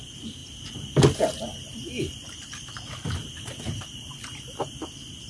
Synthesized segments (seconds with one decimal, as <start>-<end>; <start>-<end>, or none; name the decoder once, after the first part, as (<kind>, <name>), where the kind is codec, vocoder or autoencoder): none